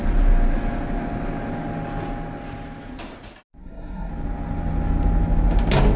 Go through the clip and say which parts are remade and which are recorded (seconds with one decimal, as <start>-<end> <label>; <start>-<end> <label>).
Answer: 0.0-3.6 recorded; 3.6-4.1 remade; 4.1-6.0 recorded